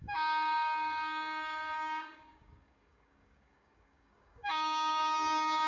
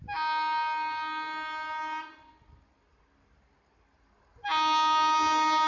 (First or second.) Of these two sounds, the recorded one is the second